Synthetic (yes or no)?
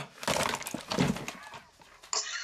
no